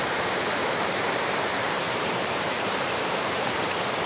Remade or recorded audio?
remade